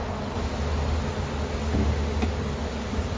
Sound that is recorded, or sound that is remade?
recorded